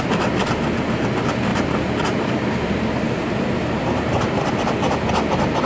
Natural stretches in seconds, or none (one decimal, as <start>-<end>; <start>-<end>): 0.0-1.5; 4.5-5.7